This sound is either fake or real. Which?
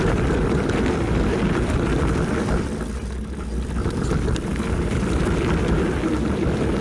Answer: real